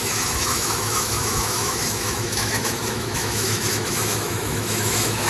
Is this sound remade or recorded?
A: remade